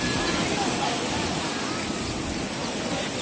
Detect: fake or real real